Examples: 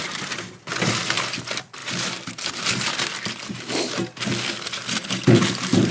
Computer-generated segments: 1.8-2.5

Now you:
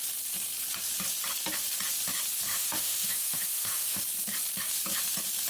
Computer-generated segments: 2.5-4.0

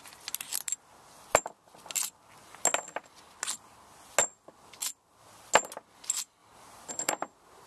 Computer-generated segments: none

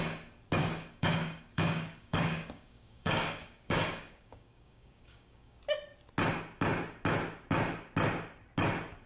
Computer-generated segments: 0.6-5.6

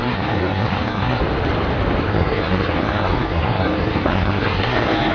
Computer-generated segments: 0.0-1.2; 2.0-5.1

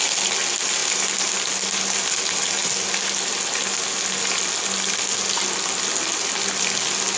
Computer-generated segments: none